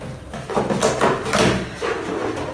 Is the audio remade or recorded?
recorded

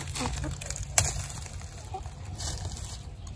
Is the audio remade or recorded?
recorded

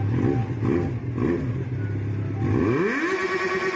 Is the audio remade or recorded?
recorded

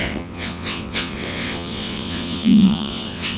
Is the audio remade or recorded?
remade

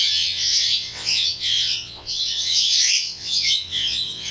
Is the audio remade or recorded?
remade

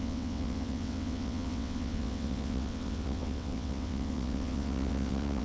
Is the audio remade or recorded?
remade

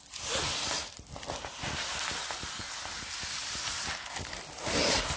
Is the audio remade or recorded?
recorded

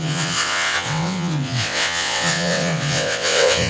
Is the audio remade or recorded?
remade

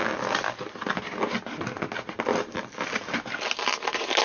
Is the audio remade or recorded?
recorded